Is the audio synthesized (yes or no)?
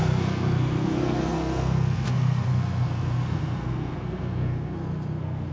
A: yes